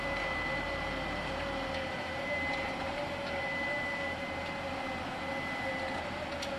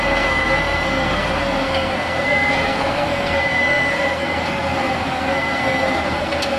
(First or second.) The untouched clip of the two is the first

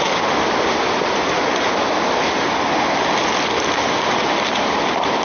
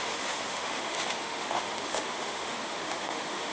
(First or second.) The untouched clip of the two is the first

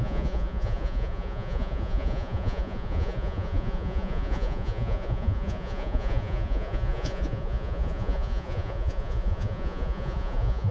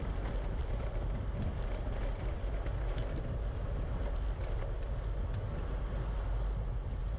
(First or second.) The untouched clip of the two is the second